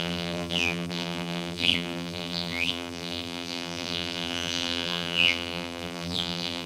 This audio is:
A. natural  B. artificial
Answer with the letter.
B